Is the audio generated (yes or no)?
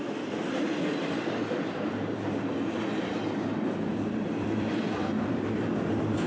yes